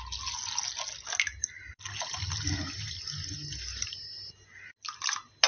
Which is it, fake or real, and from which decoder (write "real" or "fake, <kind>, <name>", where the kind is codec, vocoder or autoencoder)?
real